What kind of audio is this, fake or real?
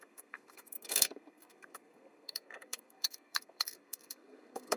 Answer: fake